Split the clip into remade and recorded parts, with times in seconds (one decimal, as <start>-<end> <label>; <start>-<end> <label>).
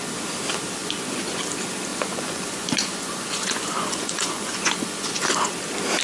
0.0-0.8 recorded; 0.8-1.4 remade; 1.4-1.9 recorded; 1.9-5.5 remade; 5.5-6.0 recorded